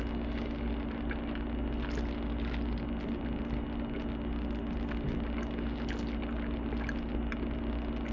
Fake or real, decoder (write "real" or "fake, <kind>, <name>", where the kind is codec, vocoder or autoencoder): real